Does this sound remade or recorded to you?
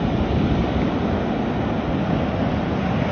recorded